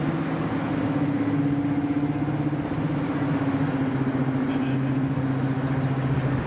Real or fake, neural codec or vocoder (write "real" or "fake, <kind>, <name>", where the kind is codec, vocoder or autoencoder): real